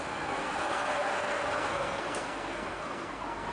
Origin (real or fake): fake